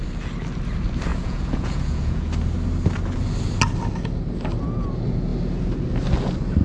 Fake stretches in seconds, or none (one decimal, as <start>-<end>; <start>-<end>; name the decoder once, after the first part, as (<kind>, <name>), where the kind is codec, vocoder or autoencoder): 1.1-2.3 (vocoder, Vocos)